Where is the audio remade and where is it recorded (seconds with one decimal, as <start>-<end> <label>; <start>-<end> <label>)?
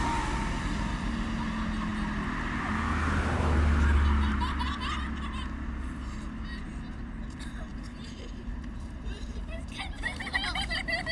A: 0.0-7.7 recorded; 7.7-10.2 remade; 10.2-11.1 recorded